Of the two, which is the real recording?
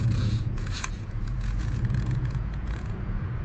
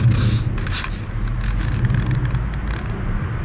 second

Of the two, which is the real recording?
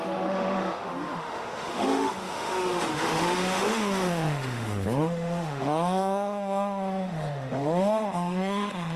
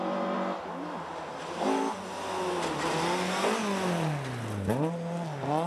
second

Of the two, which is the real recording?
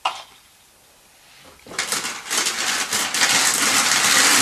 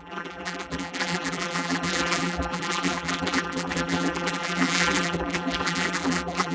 first